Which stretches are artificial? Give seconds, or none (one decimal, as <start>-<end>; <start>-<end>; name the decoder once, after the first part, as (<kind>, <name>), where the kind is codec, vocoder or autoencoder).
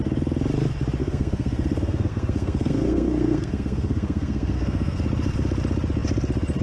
1.0-5.0 (codec, SNAC)